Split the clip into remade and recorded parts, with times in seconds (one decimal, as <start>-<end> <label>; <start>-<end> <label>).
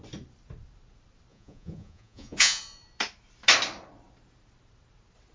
0.0-1.3 recorded; 1.3-2.6 remade; 2.6-5.3 recorded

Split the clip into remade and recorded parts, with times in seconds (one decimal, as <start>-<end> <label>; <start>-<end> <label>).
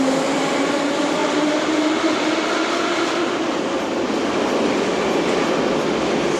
0.0-6.4 recorded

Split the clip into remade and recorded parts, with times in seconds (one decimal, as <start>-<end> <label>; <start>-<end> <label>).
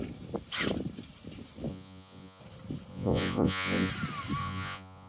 0.0-1.7 recorded; 1.7-2.4 remade; 2.4-2.9 recorded; 2.9-3.9 remade; 3.9-4.4 recorded; 4.4-5.1 remade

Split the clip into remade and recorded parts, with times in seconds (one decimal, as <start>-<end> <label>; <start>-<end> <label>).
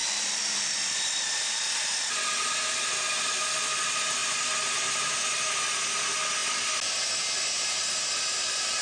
0.0-2.8 remade; 2.8-8.8 recorded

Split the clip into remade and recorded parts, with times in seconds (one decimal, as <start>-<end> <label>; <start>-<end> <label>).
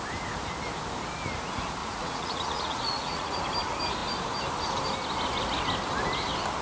0.0-1.8 recorded; 1.8-3.4 remade; 3.4-6.6 recorded